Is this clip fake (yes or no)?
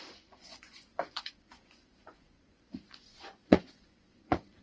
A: yes